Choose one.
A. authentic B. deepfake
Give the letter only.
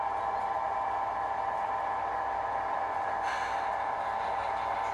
A